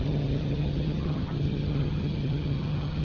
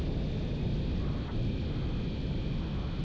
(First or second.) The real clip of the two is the second